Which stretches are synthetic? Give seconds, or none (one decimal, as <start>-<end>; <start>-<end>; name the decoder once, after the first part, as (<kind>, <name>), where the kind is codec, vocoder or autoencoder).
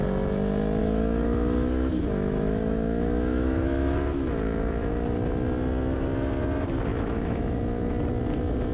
0.8-4.9 (autoencoder, DAC-VAE); 6.9-7.6